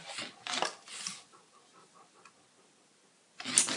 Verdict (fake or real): real